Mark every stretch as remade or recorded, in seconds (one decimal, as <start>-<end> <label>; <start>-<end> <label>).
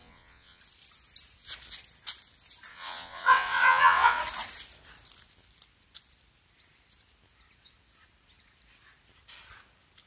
0.0-0.6 remade; 0.6-2.7 recorded; 2.7-4.2 remade; 4.2-10.1 recorded